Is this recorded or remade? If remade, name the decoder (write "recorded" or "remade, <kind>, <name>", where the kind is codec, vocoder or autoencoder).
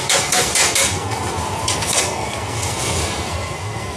remade, codec, SNAC